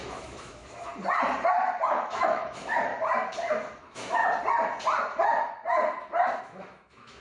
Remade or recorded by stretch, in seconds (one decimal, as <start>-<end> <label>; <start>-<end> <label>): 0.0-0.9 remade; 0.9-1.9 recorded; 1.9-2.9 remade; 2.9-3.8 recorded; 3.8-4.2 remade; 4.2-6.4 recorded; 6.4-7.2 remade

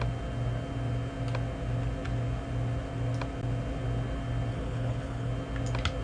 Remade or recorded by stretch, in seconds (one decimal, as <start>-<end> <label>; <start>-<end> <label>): 0.0-4.5 recorded; 4.5-5.3 remade; 5.3-6.0 recorded

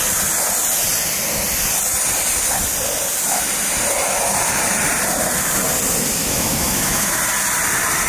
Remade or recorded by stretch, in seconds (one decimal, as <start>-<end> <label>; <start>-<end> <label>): 0.0-6.2 recorded; 6.2-7.2 remade; 7.2-8.1 recorded

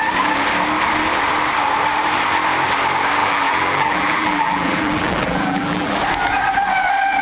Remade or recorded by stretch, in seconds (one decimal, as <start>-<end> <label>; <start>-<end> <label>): 0.0-3.2 recorded; 3.2-6.0 remade; 6.0-7.2 recorded

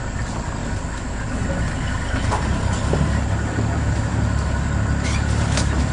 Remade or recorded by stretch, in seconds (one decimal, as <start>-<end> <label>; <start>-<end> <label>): 0.0-5.9 recorded

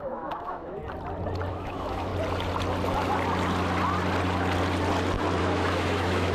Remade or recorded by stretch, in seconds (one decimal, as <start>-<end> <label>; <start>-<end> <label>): 0.0-0.8 remade; 0.8-1.5 recorded; 1.5-2.1 remade; 2.1-5.4 recorded; 5.4-6.3 remade